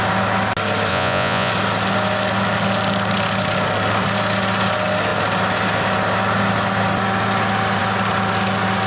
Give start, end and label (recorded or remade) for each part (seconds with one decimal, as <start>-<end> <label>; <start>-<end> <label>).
0.0-0.9 recorded; 0.9-1.5 remade; 1.5-8.9 recorded